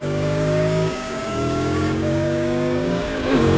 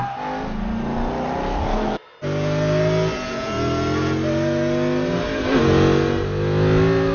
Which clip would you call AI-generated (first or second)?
first